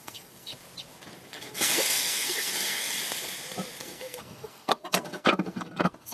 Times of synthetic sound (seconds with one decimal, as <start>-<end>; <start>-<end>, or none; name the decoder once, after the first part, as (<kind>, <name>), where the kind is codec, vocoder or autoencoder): 0.0-0.5 (codec, SNAC); 1.3-3.0; 3.8-6.1